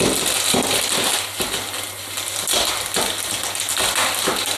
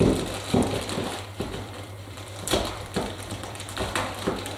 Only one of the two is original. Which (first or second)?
first